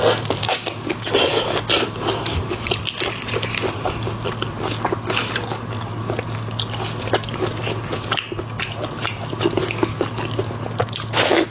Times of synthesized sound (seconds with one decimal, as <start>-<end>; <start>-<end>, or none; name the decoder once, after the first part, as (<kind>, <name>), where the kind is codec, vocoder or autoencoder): 0.4-1.3 (codec, DAC)